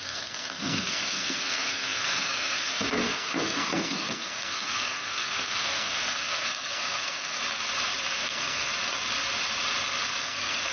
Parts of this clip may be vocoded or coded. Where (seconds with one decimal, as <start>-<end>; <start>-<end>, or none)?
0.0-7.4; 8.1-8.7; 10.2-10.7